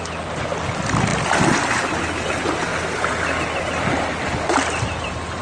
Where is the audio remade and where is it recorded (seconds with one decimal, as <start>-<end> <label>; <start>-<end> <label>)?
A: 0.0-5.4 recorded